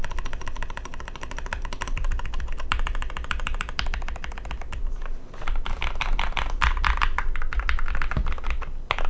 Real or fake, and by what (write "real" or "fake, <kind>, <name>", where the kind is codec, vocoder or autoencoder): real